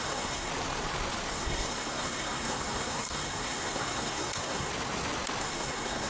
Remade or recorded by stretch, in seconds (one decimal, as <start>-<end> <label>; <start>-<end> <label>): 0.0-0.5 remade; 0.5-1.3 recorded; 1.3-4.7 remade; 4.7-5.4 recorded; 5.4-6.1 remade